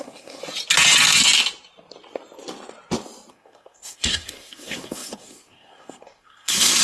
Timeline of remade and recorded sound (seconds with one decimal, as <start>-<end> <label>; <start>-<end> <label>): 0.0-0.4 remade; 0.4-3.3 recorded; 3.3-6.8 remade